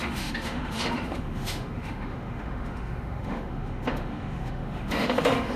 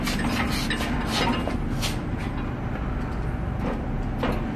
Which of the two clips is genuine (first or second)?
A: second